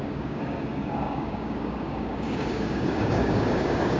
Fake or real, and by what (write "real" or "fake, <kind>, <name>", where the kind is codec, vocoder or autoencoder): fake, codec, DAC